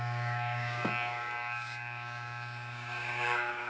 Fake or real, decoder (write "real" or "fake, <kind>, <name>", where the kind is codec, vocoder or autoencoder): fake, codec, DAC